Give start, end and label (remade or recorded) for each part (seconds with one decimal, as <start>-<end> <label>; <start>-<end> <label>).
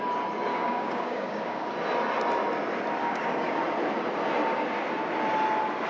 0.0-0.5 recorded; 0.5-1.7 remade; 1.7-3.0 recorded; 3.0-3.6 remade; 3.6-5.9 recorded